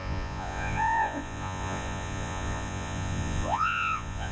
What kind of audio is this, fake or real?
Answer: fake